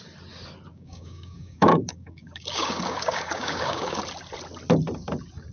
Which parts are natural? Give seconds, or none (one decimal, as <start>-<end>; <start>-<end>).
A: 0.0-0.7; 4.0-5.5